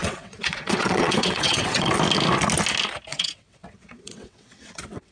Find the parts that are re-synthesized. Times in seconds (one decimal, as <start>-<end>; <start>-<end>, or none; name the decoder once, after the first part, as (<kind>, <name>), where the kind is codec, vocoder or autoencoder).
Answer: 0.0-1.9 (vocoder, WaveNeXt); 3.1-5.1